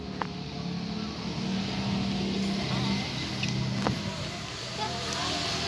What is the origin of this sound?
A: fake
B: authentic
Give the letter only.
B